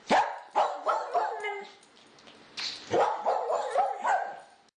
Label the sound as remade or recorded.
recorded